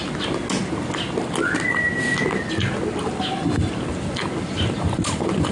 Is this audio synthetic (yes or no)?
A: no